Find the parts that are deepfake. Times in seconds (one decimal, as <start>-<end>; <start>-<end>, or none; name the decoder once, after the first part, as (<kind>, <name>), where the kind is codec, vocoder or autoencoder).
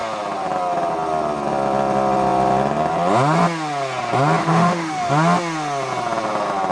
4.4-5.1 (autoencoder, DAC-VAE)